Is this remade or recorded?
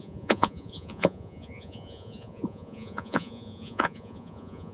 remade